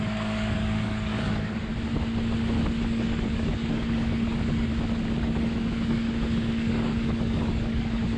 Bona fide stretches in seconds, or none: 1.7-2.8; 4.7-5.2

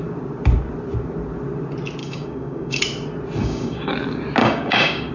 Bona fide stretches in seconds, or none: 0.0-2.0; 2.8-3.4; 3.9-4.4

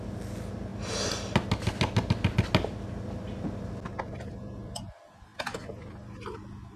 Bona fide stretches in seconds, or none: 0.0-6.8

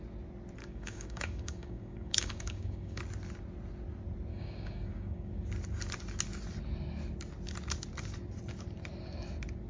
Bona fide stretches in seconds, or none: 0.0-0.6; 3.0-4.3; 5.3-9.7

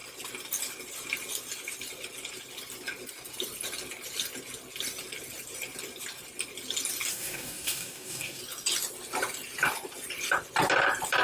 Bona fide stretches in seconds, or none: 0.0-7.1; 8.4-11.2

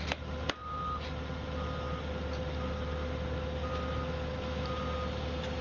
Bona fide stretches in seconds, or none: 0.0-5.6